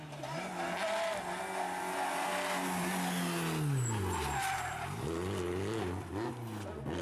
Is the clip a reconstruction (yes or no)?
no